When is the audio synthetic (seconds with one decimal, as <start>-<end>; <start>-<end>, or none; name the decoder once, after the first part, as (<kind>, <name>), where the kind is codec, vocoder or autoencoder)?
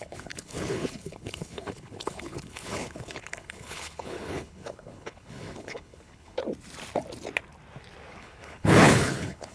0.0-6.4 (codec, HILCodec); 8.2-9.5